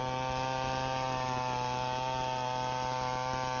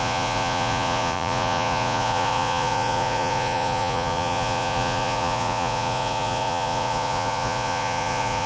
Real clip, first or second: first